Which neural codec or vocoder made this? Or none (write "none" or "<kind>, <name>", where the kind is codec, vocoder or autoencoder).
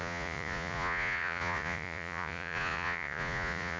vocoder, Vocos